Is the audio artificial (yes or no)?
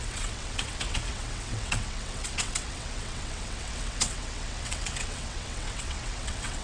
yes